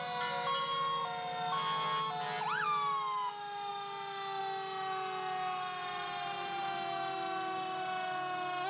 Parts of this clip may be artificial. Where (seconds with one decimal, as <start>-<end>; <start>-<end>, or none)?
5.8-6.6